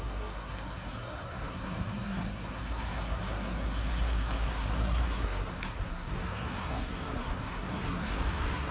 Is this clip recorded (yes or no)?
no